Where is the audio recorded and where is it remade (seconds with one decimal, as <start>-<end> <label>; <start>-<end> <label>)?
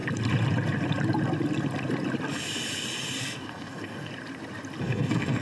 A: 0.0-3.2 recorded; 3.2-4.1 remade; 4.1-4.8 recorded; 4.8-5.4 remade